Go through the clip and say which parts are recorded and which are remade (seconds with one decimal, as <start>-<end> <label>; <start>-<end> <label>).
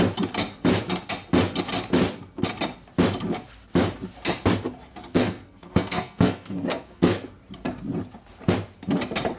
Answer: 0.0-5.1 recorded; 5.1-7.3 remade; 7.3-9.4 recorded